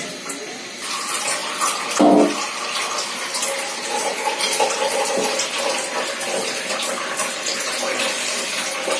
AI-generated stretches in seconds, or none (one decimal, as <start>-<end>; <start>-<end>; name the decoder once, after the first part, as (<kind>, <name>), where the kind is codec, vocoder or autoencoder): none